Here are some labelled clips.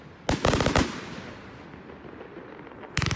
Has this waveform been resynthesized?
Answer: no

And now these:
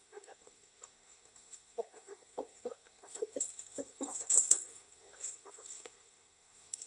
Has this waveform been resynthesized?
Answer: yes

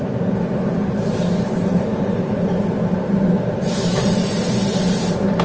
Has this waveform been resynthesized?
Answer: yes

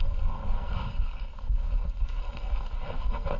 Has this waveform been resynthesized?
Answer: yes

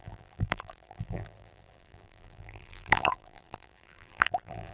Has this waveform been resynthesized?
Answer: yes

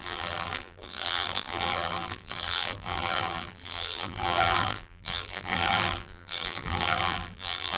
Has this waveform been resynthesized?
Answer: yes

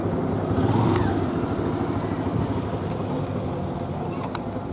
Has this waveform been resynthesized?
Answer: no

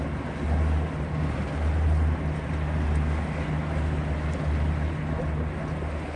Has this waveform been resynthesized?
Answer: no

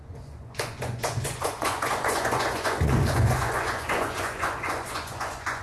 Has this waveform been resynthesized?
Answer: yes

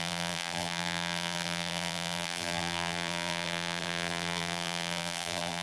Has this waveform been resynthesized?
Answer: yes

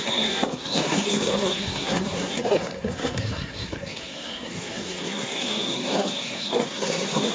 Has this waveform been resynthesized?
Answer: yes